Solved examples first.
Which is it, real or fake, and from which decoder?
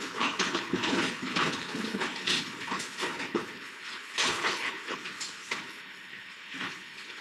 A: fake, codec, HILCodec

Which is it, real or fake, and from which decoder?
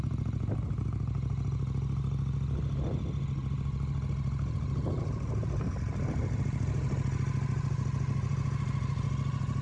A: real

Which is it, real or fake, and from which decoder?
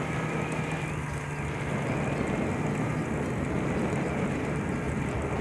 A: real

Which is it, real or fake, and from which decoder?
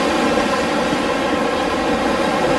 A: real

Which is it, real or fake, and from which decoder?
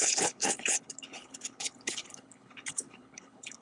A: fake, codec, HILCodec